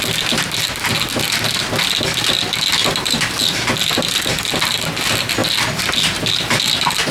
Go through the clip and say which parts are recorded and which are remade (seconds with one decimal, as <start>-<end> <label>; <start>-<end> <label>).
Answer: 0.0-7.1 recorded